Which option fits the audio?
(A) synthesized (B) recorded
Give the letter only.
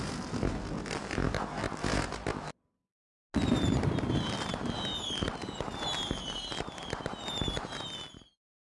B